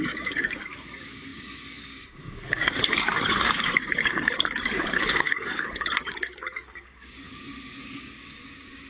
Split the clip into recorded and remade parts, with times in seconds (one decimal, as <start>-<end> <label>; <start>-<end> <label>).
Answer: 0.0-8.9 remade